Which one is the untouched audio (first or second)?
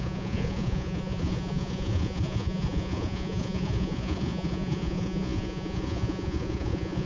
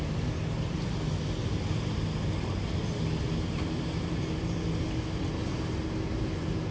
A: second